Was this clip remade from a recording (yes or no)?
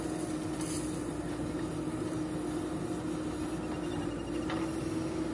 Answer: no